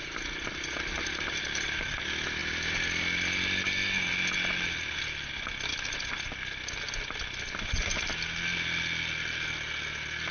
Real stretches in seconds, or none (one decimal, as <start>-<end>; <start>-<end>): 0.0-10.3